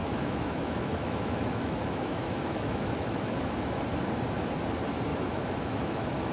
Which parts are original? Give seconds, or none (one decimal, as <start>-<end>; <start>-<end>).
3.4-5.1